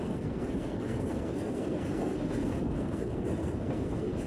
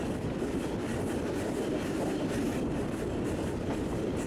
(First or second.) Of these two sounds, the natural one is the second